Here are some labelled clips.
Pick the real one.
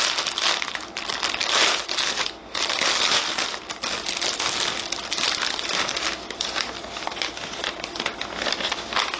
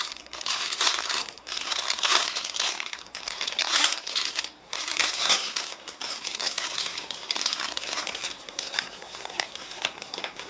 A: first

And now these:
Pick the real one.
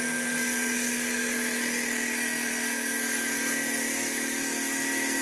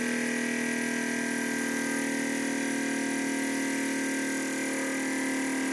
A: second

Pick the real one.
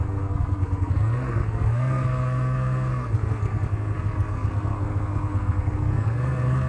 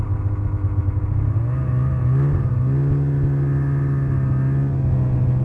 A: second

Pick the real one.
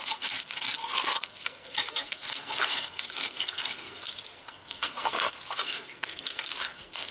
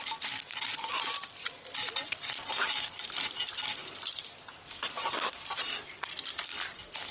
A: second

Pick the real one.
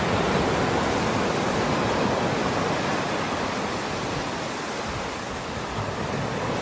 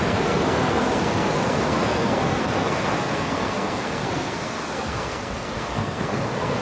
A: first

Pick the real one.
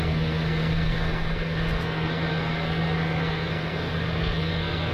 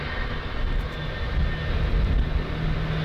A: second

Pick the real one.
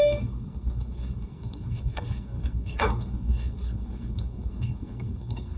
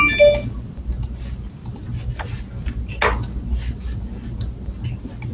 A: second